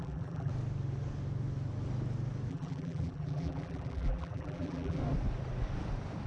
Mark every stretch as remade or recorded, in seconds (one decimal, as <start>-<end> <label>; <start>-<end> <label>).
0.0-0.5 remade; 0.5-2.5 recorded; 2.5-5.0 remade; 5.0-6.3 recorded

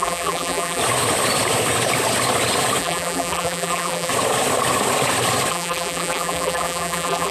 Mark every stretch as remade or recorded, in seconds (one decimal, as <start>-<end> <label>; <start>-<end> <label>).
0.0-0.8 remade; 0.8-2.8 recorded; 2.8-4.1 remade; 4.1-5.5 recorded; 5.5-7.3 remade

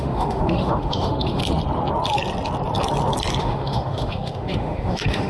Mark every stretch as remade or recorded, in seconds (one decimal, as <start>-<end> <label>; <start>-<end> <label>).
0.0-1.4 remade; 1.4-3.4 recorded; 3.4-5.3 remade

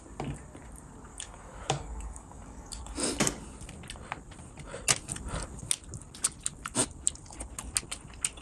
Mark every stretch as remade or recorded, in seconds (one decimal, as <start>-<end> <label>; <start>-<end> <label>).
0.0-1.1 recorded; 1.1-2.8 remade; 2.8-8.4 recorded

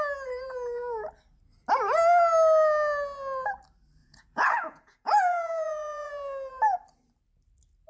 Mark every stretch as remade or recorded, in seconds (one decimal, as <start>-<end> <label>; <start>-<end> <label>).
0.0-4.0 recorded; 4.0-6.1 remade; 6.1-7.9 recorded

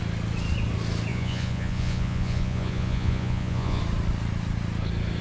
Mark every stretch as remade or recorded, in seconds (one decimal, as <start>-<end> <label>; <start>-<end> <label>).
0.0-1.1 recorded; 1.1-3.8 remade; 3.8-5.2 recorded

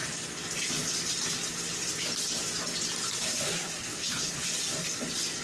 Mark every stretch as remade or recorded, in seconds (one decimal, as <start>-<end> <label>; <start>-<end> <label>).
0.0-3.2 recorded; 3.2-4.5 remade; 4.5-5.4 recorded

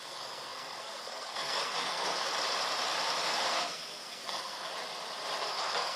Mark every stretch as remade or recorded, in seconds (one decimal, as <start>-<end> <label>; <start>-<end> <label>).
0.0-2.3 remade; 2.3-3.2 recorded; 3.2-4.7 remade; 4.7-5.4 recorded; 5.4-6.0 remade